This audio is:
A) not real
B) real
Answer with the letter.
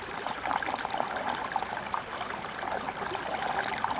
B